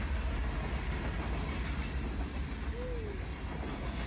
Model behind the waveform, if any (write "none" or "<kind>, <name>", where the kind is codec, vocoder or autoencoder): none